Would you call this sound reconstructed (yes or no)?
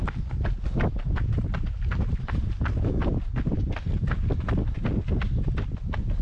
no